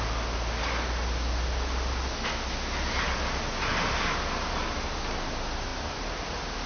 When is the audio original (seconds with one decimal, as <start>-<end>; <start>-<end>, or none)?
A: 0.0-5.7; 6.3-6.7